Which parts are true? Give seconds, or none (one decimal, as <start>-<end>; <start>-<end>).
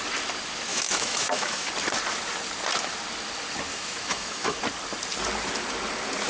0.0-0.7; 1.7-3.7; 4.6-6.3